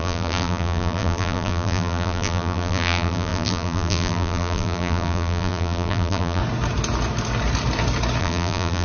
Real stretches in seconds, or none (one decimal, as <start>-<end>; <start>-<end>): 6.4-8.2